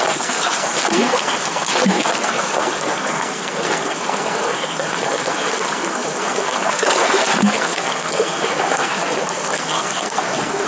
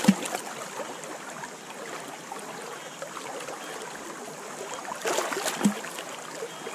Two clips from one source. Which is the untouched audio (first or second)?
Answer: second